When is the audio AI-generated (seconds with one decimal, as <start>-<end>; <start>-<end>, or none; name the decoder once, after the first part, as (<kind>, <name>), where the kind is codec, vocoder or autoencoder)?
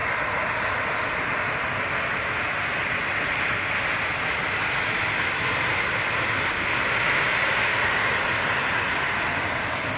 0.0-10.0 (vocoder, BigVGAN v2)